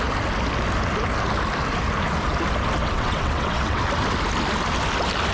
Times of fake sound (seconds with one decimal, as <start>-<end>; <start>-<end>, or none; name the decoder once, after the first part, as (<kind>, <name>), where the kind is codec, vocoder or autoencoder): 2.8-3.8 (vocoder, WaveNeXt)